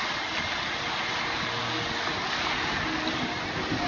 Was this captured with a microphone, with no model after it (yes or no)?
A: yes